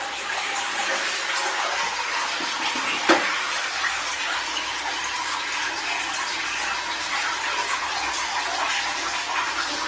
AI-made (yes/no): no